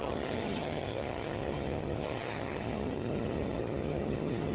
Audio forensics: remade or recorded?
remade